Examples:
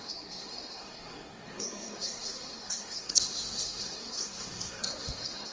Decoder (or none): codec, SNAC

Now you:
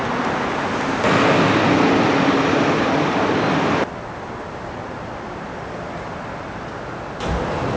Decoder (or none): none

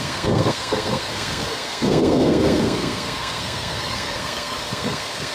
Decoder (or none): codec, SNAC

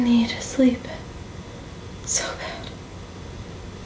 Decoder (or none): none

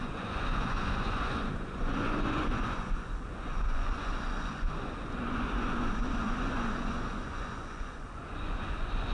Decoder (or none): vocoder, Vocos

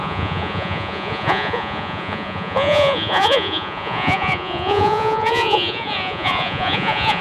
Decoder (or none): vocoder, Vocos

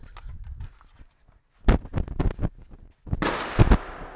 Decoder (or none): none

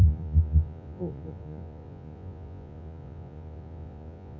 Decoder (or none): vocoder, Vocos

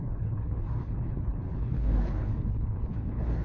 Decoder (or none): codec, HILCodec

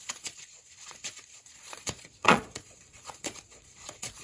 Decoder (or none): vocoder, Vocos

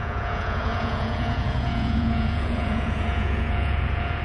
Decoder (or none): vocoder, Vocos